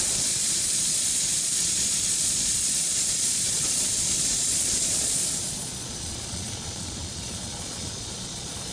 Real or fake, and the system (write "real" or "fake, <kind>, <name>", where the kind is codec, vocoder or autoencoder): fake, vocoder, Vocos